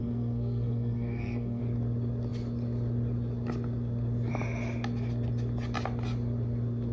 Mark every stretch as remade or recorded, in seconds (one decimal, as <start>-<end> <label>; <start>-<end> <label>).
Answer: 0.0-1.6 remade; 1.6-6.9 recorded